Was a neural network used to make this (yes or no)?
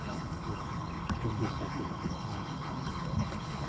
yes